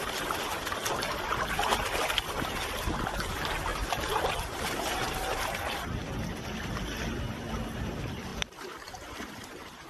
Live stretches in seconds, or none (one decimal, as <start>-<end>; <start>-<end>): 0.0-3.7; 5.6-8.3